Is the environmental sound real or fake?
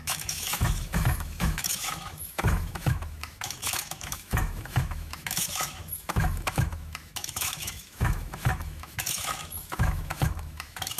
fake